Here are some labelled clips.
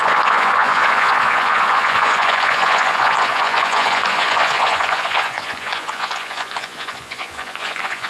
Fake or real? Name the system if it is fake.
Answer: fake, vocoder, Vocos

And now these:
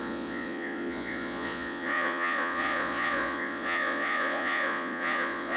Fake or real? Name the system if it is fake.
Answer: fake, vocoder, Vocos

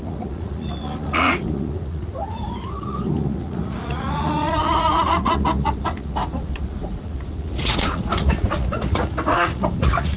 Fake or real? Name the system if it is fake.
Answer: fake, vocoder, Vocos